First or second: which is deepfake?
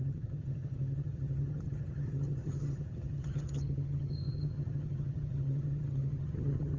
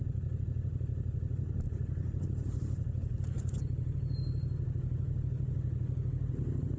first